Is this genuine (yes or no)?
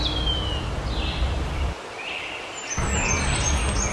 yes